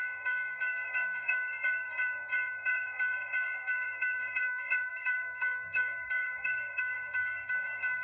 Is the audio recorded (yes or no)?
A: no